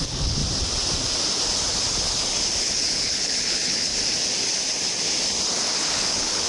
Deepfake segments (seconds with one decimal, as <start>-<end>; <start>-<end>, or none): 0.0-0.4; 2.6-3.9; 5.9-6.5